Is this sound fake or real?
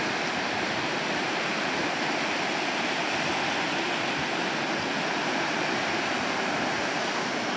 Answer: fake